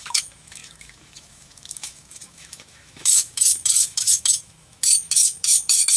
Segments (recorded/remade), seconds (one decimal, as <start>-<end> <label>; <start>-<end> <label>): 0.0-6.0 remade